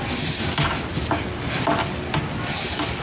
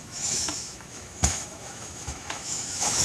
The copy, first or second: second